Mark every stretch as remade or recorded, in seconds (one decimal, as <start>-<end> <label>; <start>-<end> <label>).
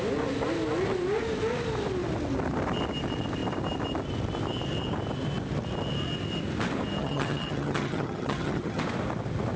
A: 0.0-7.0 recorded; 7.0-8.8 remade; 8.8-9.6 recorded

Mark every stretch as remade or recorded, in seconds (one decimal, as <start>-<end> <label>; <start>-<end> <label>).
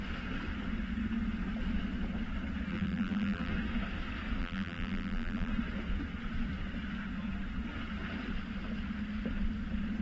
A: 0.0-2.7 recorded; 2.7-3.5 remade; 3.5-4.4 recorded; 4.4-5.5 remade; 5.5-10.0 recorded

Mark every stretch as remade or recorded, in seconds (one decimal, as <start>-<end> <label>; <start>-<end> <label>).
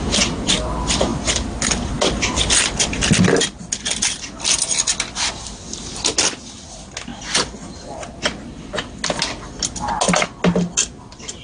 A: 0.0-11.4 recorded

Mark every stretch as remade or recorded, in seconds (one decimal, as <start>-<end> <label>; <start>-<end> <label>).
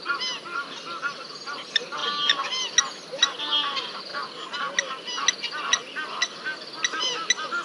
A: 0.0-7.6 recorded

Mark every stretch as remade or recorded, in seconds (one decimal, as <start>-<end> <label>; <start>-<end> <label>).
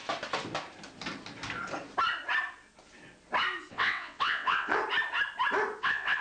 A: 0.0-3.7 recorded; 3.7-4.8 remade; 4.8-5.8 recorded; 5.8-6.2 remade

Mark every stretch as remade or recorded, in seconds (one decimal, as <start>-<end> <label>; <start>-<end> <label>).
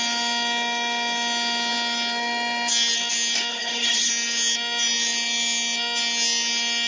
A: 0.0-3.5 recorded; 3.5-4.1 remade; 4.1-6.9 recorded